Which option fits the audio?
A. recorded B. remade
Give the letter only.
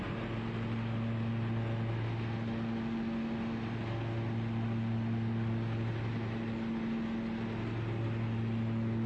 A